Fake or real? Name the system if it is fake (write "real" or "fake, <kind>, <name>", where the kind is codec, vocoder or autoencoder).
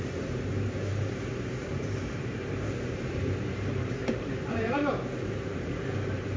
fake, vocoder, BigVGAN v2